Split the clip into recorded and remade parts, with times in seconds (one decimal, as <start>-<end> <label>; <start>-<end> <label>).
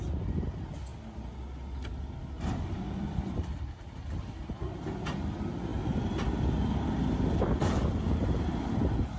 0.0-9.2 recorded